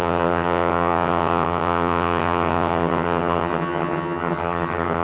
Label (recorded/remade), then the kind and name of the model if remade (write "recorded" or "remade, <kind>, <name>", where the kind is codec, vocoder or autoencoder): remade, vocoder, HiFi-GAN